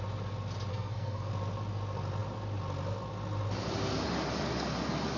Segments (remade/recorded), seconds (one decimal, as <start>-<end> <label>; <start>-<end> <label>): 0.0-0.7 recorded; 0.7-1.3 remade; 1.3-5.2 recorded